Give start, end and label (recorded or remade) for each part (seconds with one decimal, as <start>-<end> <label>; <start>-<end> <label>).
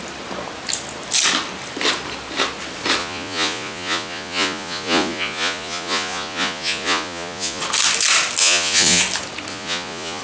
0.0-3.0 recorded; 3.0-7.6 remade; 7.6-8.4 recorded; 8.4-9.0 remade; 9.0-9.5 recorded; 9.5-10.2 remade